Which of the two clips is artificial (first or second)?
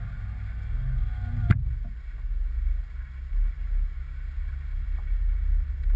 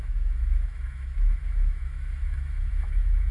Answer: second